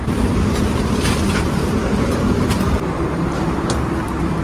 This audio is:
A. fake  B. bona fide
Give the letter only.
A